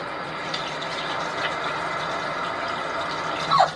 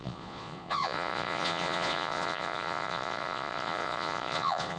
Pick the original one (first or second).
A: first